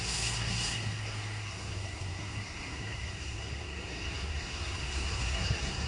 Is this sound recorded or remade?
remade